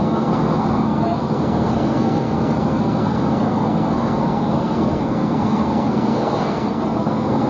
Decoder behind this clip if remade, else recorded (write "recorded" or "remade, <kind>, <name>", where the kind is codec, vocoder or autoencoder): remade, codec, SNAC